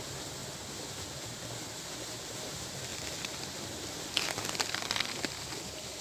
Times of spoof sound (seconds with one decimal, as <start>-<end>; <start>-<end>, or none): none